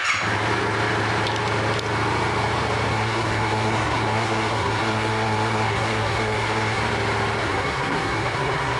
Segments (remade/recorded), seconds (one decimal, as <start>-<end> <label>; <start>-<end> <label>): 0.0-2.9 recorded; 2.9-6.8 remade; 6.8-7.4 recorded; 7.4-8.8 remade